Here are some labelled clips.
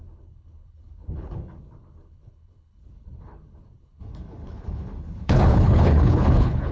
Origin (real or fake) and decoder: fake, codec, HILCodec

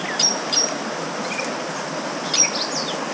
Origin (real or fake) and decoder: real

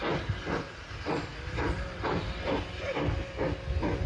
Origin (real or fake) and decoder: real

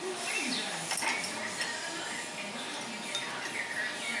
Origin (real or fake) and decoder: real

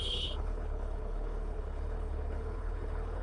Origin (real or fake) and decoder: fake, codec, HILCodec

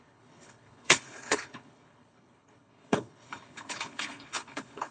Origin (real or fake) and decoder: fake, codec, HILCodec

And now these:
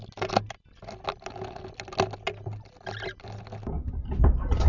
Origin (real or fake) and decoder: real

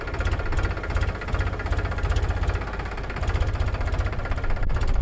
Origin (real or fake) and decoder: real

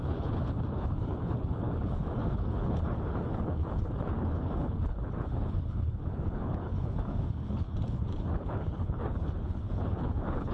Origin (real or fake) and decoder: fake, codec, HILCodec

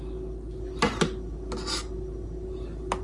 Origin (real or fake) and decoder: real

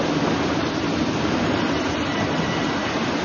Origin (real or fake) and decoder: real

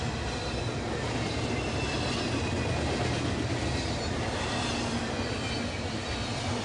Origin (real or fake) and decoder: real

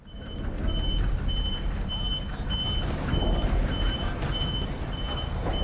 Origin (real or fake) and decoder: real